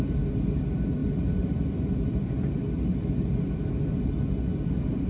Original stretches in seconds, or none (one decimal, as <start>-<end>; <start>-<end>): 0.0-5.1